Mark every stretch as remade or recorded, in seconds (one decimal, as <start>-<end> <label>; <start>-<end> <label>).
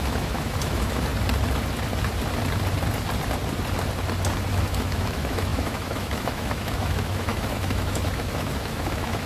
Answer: 0.0-1.1 remade; 1.1-4.5 recorded; 4.5-9.3 remade